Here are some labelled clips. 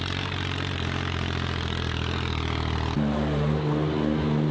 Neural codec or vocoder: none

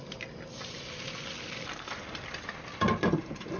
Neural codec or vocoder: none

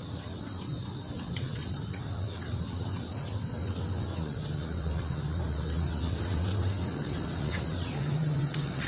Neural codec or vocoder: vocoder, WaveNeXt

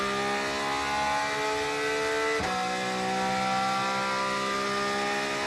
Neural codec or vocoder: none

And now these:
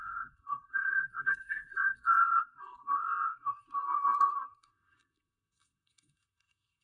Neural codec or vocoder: codec, SNAC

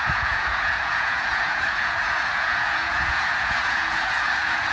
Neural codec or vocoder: vocoder, Vocos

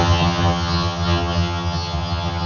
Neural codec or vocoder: vocoder, HiFi-GAN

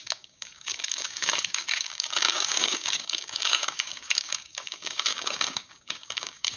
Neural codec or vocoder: codec, DAC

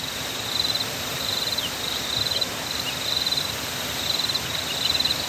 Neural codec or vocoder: vocoder, BigVGAN v2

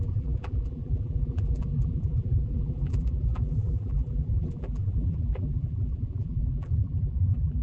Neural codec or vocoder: vocoder, BigVGAN v2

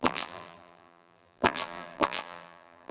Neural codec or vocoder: vocoder, BigVGAN v2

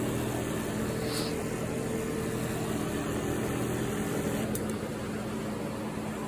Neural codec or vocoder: none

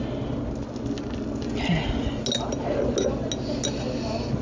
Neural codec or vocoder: none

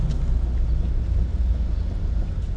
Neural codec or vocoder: none